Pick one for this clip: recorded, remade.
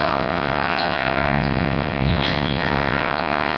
remade